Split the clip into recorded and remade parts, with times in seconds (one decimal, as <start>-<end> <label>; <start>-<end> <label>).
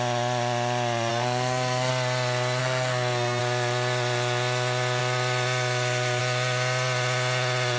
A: 0.0-1.1 recorded; 1.1-1.9 remade; 1.9-2.6 recorded; 2.6-3.4 remade; 3.4-7.8 recorded